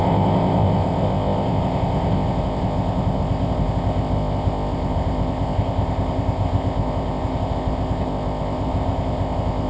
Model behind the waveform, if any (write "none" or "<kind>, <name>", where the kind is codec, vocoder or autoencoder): codec, ZipCodec